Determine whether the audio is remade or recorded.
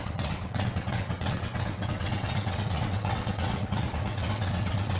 remade